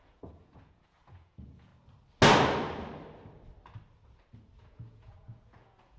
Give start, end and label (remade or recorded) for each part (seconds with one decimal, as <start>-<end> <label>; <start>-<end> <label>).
0.0-1.7 remade; 1.7-4.6 recorded; 4.6-6.0 remade